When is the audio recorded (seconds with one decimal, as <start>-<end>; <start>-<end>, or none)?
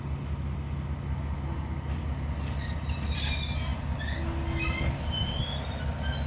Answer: 0.0-6.3